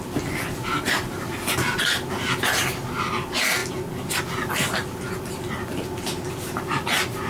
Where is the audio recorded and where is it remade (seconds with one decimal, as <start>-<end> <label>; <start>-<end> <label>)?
0.0-7.3 recorded